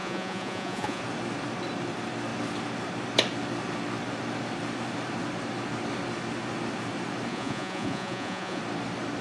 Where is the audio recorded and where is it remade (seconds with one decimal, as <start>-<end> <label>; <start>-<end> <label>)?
0.0-1.0 remade; 1.0-7.3 recorded; 7.3-8.6 remade; 8.6-9.2 recorded